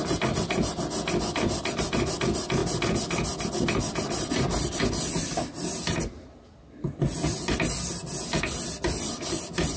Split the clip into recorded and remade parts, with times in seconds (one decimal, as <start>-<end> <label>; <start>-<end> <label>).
0.0-9.8 recorded